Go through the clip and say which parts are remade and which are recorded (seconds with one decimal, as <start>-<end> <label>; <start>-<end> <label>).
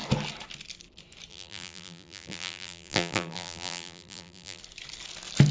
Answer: 0.0-1.3 recorded; 1.3-4.6 remade; 4.6-5.5 recorded